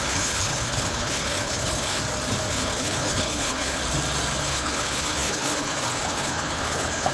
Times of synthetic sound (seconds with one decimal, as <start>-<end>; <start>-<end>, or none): 0.0-2.0; 2.5-3.8; 4.4-7.1